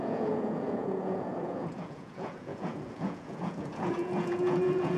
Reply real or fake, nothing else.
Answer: fake